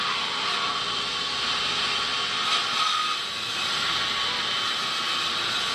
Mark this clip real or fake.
real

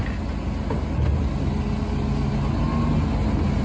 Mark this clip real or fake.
real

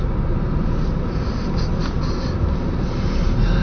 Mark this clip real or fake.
real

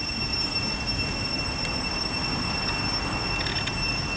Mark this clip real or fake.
real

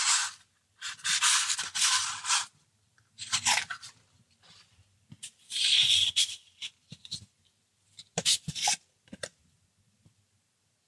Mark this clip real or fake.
fake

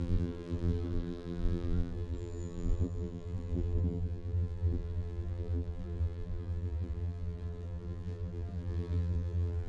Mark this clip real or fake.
fake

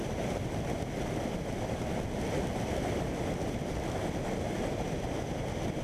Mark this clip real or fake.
real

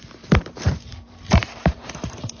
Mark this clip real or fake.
fake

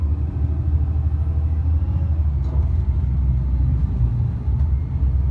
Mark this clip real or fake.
real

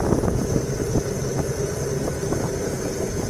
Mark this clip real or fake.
fake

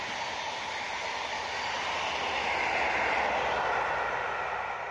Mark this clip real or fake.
real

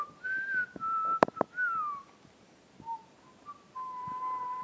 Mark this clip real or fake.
real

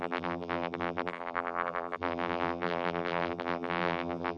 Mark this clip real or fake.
fake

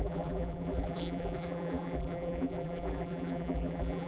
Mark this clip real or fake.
fake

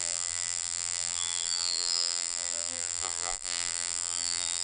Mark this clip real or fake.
fake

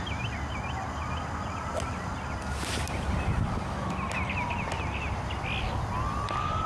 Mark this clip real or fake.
real